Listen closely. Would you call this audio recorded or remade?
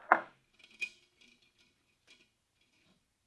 recorded